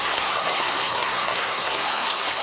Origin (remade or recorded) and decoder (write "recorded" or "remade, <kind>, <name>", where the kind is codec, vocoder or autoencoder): remade, codec, SNAC